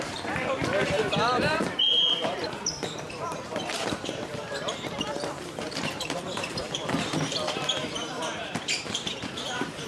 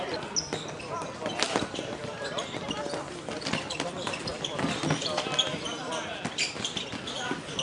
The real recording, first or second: second